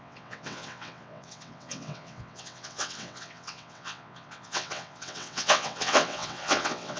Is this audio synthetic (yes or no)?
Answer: yes